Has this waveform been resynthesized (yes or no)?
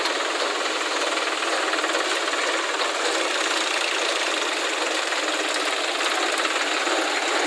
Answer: no